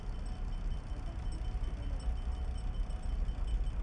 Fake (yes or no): no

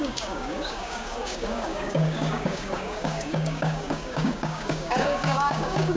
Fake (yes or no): yes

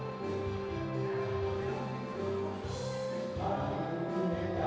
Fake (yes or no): no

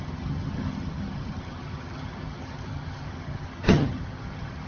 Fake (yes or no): yes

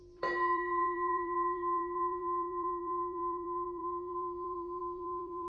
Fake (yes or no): yes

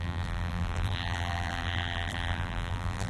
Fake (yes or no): yes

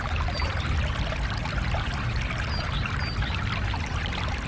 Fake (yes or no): no